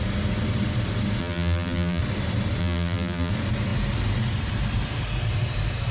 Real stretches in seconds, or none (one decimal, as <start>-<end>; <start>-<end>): 0.0-1.2; 2.0-2.6; 3.3-5.9